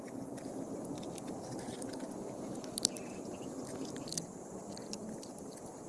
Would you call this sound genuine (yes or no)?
yes